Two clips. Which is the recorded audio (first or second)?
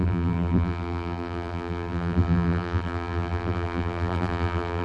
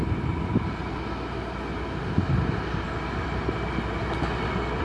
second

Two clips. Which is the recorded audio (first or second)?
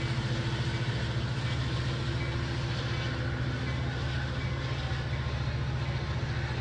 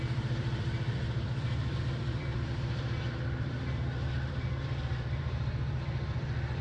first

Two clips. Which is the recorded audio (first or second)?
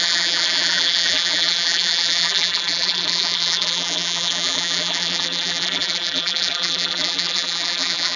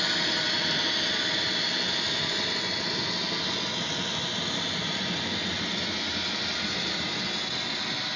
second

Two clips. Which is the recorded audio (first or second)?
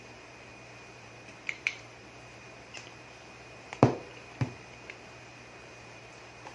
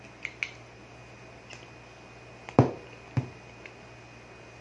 second